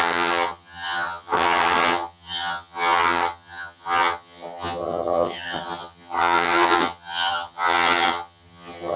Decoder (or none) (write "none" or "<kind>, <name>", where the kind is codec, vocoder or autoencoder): vocoder, HiFi-GAN